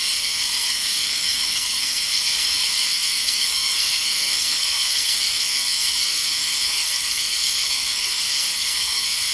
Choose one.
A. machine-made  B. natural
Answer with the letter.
A